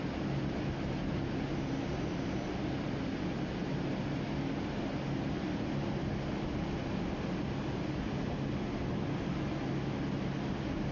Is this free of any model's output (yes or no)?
yes